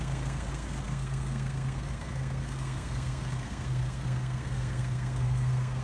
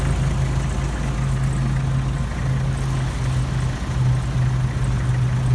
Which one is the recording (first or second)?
second